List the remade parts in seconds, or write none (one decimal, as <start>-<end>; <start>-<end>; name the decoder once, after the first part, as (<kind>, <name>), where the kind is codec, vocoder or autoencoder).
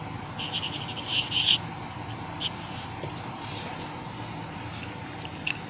none